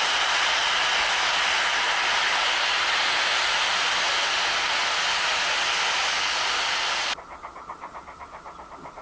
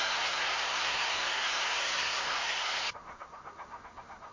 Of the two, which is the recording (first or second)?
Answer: first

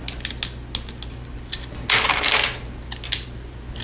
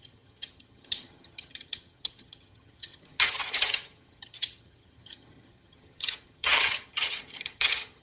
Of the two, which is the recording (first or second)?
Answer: first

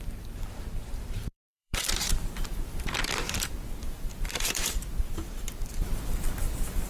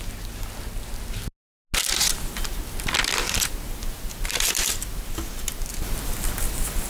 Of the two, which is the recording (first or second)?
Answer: second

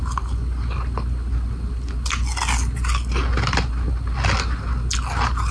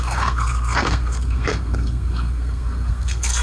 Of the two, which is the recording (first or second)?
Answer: first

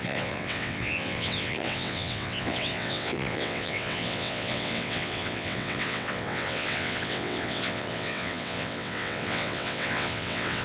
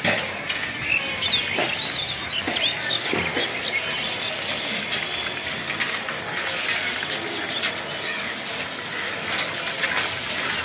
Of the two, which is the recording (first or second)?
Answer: second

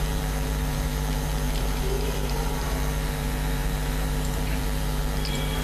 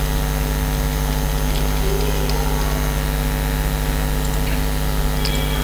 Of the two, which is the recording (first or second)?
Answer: second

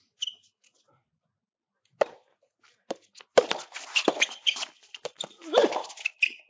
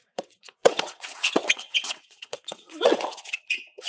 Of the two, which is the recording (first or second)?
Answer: first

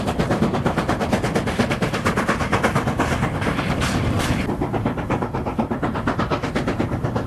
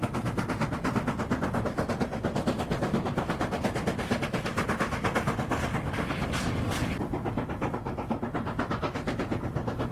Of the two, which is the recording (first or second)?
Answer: second